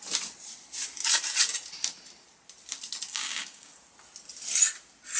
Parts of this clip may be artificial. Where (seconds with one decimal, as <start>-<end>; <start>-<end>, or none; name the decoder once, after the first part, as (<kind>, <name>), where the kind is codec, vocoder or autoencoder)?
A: 3.1-3.7 (codec, DAC)